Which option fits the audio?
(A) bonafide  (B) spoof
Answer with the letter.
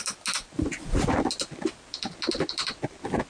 A